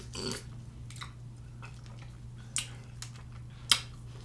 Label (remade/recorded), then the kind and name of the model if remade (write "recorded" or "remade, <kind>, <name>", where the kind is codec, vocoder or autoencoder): recorded